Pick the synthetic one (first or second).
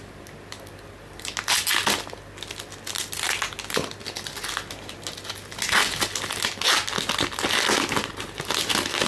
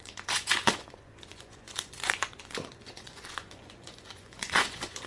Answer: second